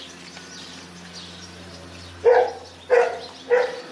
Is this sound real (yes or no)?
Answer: yes